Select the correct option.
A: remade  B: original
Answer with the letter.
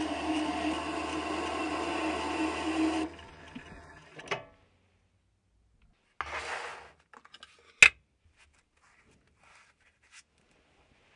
B